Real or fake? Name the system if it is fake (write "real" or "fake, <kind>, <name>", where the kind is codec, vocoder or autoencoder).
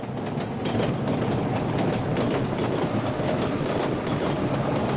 real